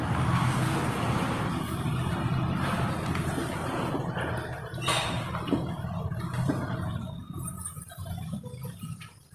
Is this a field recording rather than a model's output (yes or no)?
no